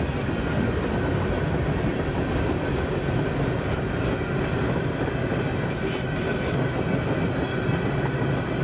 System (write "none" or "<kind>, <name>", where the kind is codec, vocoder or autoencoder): none